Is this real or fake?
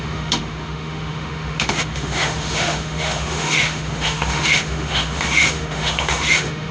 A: fake